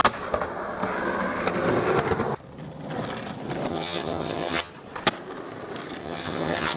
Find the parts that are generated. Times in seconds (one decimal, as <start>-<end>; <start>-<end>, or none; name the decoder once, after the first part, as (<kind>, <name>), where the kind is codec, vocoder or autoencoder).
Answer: 3.7-4.7 (vocoder, HiFi-GAN); 6.0-6.8